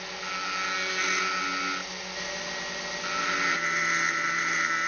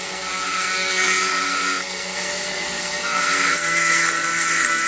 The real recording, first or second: first